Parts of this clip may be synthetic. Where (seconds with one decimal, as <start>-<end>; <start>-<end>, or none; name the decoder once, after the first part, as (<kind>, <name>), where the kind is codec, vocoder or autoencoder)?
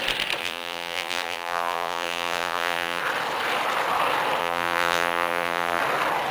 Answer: 0.4-3.0 (vocoder, BigVGAN v2); 4.4-5.8